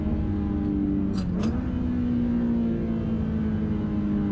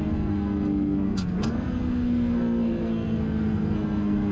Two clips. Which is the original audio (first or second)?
first